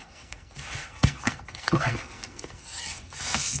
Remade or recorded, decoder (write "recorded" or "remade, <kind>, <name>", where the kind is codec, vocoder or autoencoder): remade, codec, SNAC